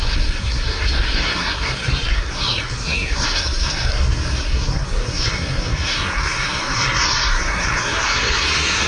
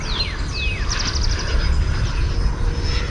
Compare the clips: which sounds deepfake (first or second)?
first